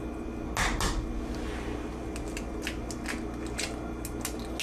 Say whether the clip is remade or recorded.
recorded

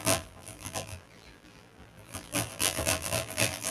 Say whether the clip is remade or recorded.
remade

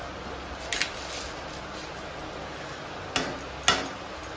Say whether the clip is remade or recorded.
recorded